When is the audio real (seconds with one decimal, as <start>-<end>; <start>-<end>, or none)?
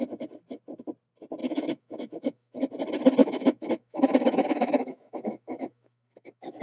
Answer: 0.0-1.4; 2.6-3.2